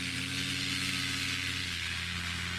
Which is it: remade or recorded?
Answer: recorded